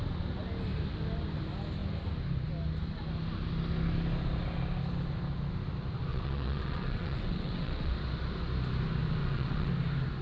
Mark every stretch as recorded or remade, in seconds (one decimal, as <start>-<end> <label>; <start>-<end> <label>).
0.0-6.1 recorded; 6.1-7.9 remade; 7.9-9.2 recorded; 9.2-9.7 remade; 9.7-10.2 recorded